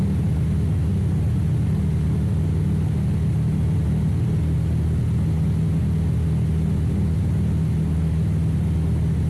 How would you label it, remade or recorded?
recorded